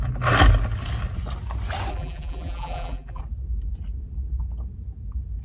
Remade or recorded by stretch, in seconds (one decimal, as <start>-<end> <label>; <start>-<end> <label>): 0.0-1.9 recorded; 1.9-3.2 remade; 3.2-5.4 recorded